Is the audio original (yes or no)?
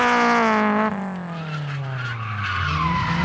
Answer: yes